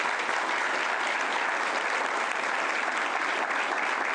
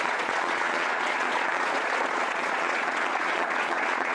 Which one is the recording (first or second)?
first